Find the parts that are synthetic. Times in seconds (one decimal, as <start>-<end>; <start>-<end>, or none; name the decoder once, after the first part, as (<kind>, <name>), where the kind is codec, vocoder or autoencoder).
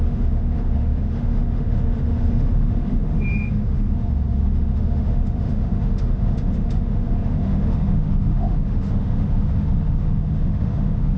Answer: 0.0-11.2 (autoencoder, DAC-VAE)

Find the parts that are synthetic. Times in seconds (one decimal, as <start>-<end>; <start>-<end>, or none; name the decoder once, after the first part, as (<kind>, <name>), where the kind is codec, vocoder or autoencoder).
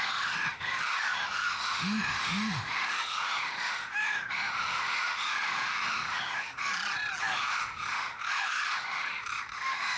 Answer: 0.0-6.7 (autoencoder, DAC-VAE); 7.2-10.0